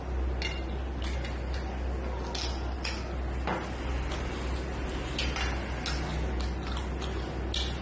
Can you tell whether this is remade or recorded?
recorded